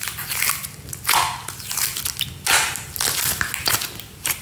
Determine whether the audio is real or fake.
real